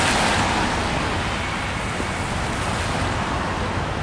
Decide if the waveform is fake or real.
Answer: real